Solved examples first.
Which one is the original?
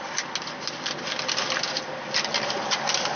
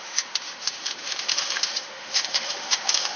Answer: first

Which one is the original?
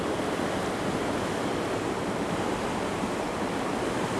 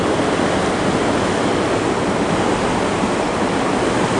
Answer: second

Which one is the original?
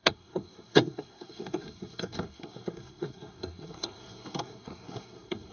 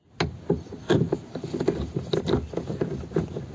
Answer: second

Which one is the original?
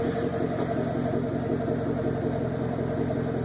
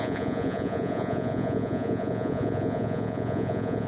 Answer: first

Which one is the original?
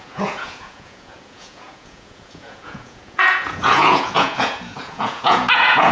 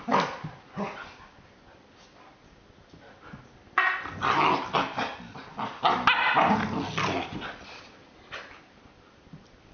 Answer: second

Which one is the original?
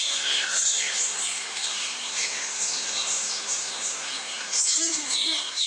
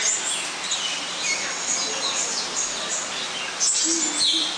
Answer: second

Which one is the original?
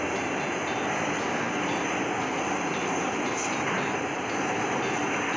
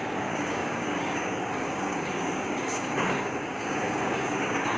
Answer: first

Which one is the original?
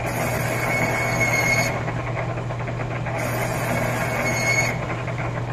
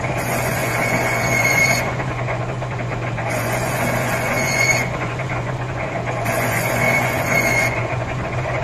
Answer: first